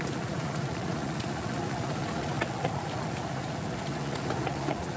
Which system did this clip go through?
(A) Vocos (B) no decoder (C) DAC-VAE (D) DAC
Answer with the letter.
A